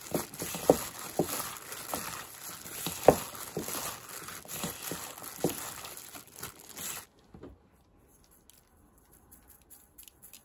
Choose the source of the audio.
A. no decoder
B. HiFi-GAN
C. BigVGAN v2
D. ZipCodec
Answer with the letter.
A